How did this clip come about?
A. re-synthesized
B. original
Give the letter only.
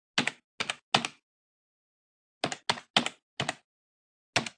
B